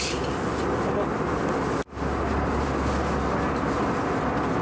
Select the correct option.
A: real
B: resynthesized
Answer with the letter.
A